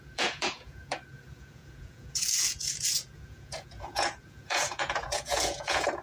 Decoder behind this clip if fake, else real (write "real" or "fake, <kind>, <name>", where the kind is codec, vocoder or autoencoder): fake, vocoder, Vocos